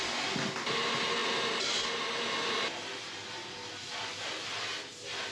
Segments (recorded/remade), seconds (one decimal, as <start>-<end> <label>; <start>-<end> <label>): 0.0-5.3 recorded